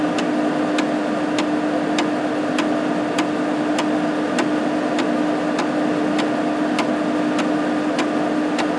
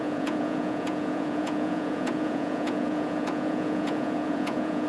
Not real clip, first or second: second